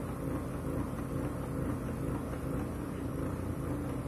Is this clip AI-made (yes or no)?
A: no